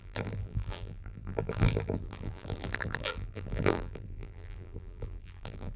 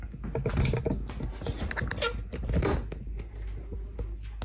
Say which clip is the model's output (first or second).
first